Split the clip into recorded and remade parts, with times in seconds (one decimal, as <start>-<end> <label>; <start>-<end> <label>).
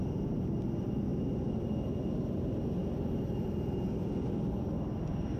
0.0-5.4 recorded